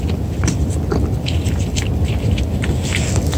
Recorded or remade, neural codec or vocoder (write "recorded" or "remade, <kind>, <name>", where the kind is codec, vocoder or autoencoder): recorded